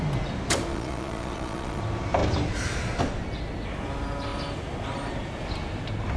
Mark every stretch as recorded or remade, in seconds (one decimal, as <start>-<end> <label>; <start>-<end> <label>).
0.0-0.7 recorded; 0.7-1.8 remade; 1.8-6.2 recorded